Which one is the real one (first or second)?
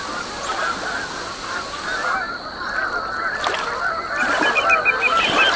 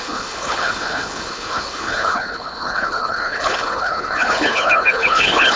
first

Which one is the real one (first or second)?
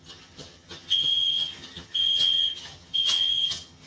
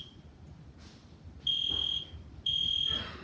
second